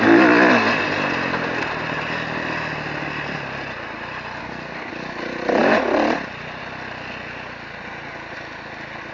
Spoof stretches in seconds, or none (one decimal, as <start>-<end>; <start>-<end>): 4.4-4.9